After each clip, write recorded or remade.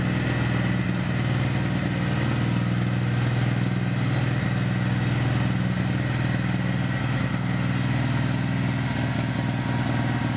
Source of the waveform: recorded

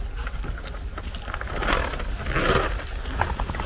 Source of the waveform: recorded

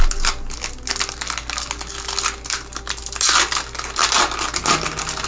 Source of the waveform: recorded